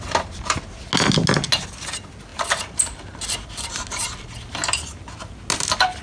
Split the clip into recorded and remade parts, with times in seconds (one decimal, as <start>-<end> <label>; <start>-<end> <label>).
0.0-6.0 recorded